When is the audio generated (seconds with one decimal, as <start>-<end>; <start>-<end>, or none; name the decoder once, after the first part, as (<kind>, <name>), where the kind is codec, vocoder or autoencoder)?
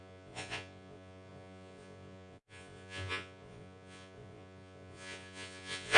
0.0-6.0 (vocoder, Vocos)